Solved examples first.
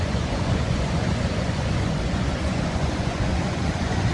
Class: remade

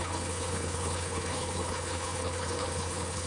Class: remade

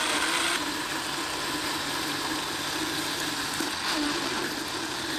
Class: recorded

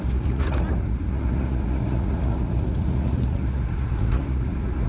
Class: remade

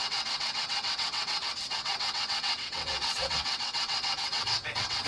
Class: remade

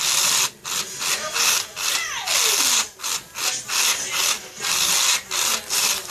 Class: recorded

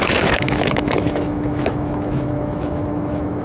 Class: remade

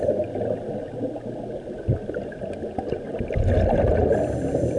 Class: recorded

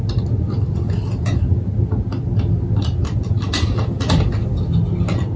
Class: recorded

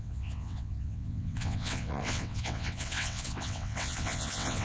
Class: remade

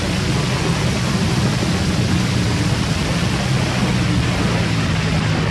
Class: recorded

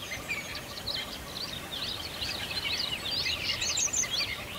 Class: recorded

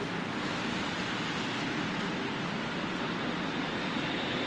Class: recorded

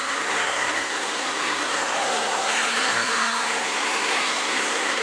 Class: remade